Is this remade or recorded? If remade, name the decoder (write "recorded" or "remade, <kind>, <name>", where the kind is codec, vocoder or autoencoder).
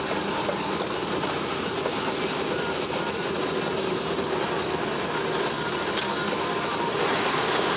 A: recorded